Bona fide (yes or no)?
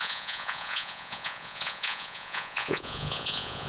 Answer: no